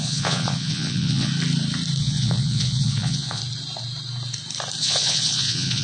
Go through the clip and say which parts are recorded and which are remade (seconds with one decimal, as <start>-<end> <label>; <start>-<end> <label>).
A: 0.0-1.3 remade; 1.3-2.0 recorded; 2.0-3.4 remade; 3.4-4.8 recorded; 4.8-5.8 remade